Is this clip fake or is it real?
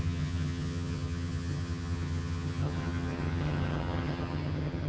fake